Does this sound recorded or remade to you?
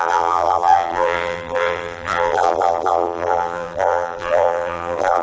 remade